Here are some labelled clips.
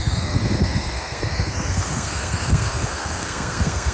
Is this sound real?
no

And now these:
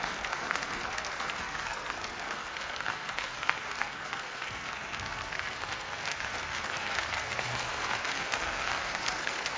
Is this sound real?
no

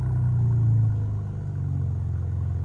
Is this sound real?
yes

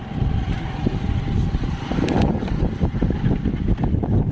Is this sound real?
yes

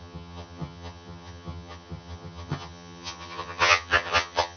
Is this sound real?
no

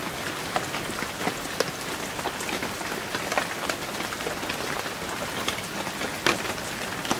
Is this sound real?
yes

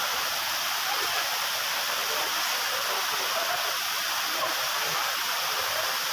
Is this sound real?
no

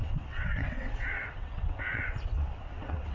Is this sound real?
no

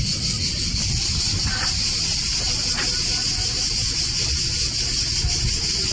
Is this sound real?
yes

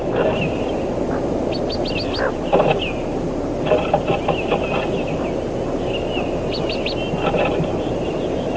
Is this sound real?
yes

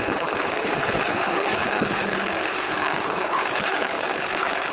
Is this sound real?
no